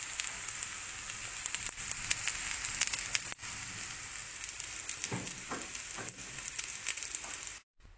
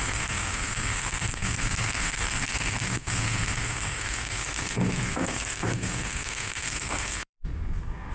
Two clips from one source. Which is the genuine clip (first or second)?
first